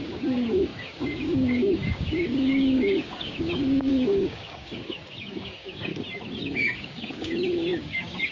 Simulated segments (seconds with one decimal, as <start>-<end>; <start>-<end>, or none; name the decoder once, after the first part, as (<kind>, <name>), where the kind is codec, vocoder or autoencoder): 0.0-5.9 (codec, DAC); 6.4-8.3